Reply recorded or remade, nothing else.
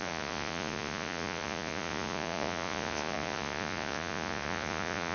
remade